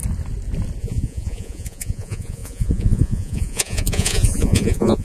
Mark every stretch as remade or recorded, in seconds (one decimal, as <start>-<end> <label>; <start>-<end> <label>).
0.0-0.8 recorded; 0.8-5.0 remade